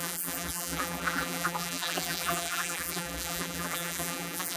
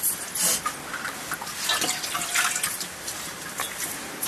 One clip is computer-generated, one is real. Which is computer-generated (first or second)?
first